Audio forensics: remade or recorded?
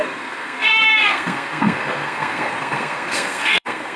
remade